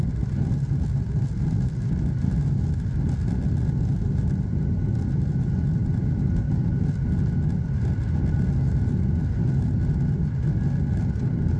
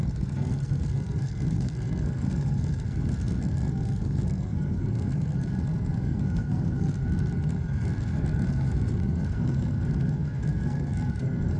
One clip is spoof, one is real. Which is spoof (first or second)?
second